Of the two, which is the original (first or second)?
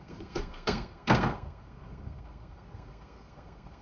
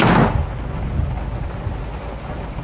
second